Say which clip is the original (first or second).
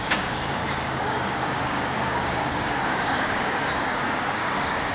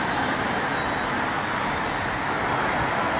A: second